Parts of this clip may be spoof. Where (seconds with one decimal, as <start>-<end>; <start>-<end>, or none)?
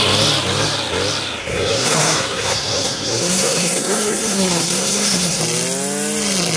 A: 1.4-5.4